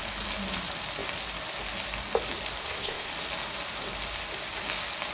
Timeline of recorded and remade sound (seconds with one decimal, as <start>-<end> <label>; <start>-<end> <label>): 0.0-2.6 recorded; 2.6-3.1 remade; 3.1-5.1 recorded

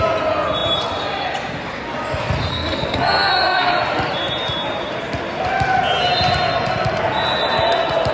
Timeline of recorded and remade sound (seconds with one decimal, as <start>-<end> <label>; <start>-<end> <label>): 0.0-2.5 recorded; 2.5-3.7 remade; 3.7-8.1 recorded

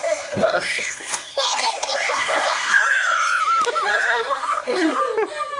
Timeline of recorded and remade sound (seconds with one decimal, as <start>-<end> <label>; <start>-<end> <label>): 0.0-3.4 remade; 3.4-3.9 recorded; 3.9-5.0 remade; 5.0-5.6 recorded

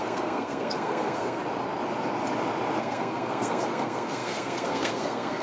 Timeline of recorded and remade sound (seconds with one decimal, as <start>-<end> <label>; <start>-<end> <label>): 0.0-1.4 remade; 1.4-2.8 recorded; 2.8-5.4 remade

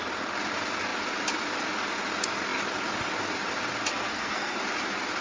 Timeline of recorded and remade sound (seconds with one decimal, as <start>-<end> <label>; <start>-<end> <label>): 0.0-3.9 recorded; 3.9-4.6 remade; 4.6-5.2 recorded

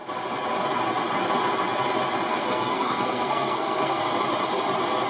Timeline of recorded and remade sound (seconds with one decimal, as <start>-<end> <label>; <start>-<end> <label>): 0.0-2.3 recorded; 2.3-4.0 remade; 4.0-5.1 recorded